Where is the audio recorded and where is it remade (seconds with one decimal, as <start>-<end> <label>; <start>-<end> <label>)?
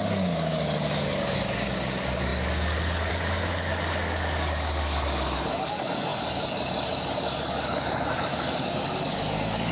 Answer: 0.0-9.7 remade